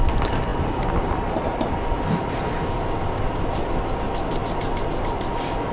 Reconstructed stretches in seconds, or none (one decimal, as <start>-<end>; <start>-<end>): none